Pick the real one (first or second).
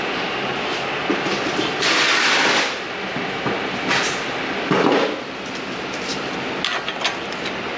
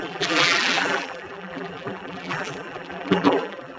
first